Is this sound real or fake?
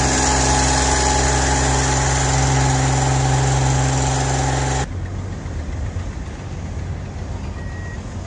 real